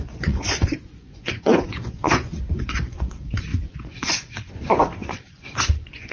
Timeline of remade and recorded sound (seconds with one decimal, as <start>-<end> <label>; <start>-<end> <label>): 0.0-6.1 remade